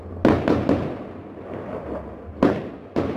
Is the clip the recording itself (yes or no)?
yes